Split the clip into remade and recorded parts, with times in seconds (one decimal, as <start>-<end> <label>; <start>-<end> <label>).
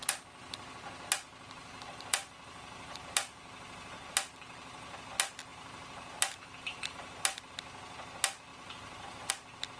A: 0.0-1.6 recorded; 1.6-4.1 remade; 4.1-5.5 recorded; 5.5-7.5 remade; 7.5-8.5 recorded; 8.5-9.3 remade; 9.3-9.8 recorded